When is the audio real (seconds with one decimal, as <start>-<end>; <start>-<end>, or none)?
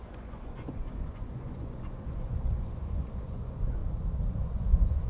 3.8-4.3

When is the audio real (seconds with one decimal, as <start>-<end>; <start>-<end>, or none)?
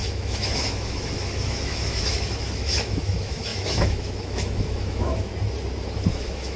5.3-6.1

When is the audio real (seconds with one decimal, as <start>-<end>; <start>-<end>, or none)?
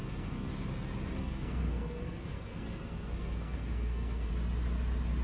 0.5-1.2; 4.3-5.2